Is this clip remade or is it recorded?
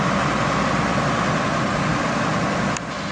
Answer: recorded